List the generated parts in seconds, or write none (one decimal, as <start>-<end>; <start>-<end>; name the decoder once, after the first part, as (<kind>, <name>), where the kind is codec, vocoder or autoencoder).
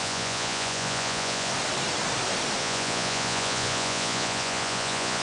0.0-1.5 (vocoder, Vocos); 2.6-5.2